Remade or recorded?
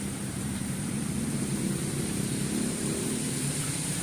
remade